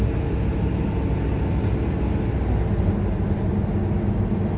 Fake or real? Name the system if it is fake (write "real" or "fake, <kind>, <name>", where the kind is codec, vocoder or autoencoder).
real